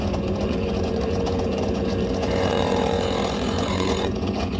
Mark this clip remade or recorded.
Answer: remade